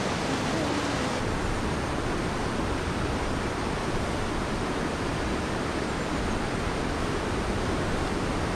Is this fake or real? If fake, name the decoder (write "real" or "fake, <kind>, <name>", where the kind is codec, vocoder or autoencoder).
real